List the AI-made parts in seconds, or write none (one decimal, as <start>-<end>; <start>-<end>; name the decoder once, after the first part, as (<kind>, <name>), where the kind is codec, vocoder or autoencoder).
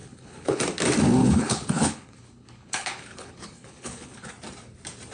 0.0-0.6 (codec, HILCodec); 1.2-4.3